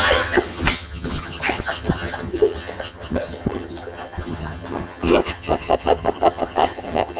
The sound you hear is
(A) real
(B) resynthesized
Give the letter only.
B